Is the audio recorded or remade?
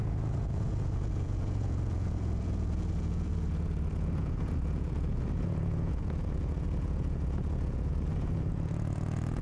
remade